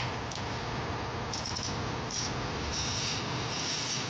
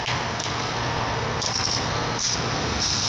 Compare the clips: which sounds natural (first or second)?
first